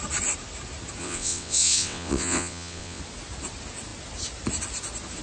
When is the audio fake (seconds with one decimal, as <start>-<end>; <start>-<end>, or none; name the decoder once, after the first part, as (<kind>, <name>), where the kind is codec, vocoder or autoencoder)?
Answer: 1.0-3.0 (vocoder, WaveNeXt)